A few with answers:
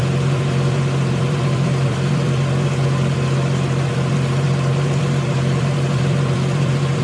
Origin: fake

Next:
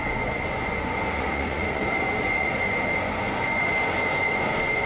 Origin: fake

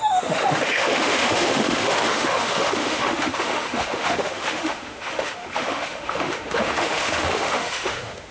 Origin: fake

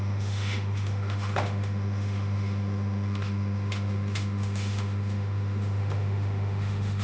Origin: fake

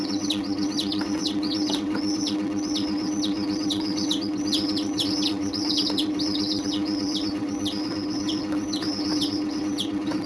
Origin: fake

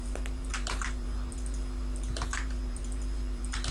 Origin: fake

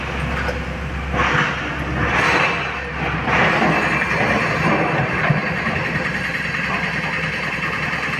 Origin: real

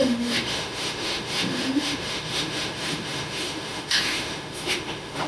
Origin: fake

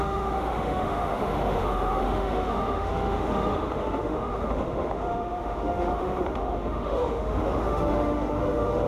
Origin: fake